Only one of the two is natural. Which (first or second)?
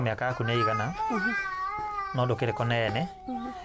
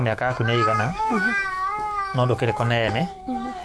first